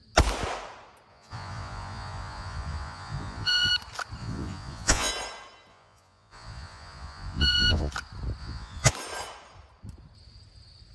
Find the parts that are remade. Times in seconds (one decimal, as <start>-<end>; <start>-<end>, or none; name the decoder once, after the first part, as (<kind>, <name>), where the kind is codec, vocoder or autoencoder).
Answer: 1.1-3.7 (vocoder, Vocos); 4.2-5.1; 5.7-7.9; 8.4-8.9